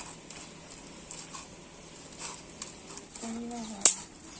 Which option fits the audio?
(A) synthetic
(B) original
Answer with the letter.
B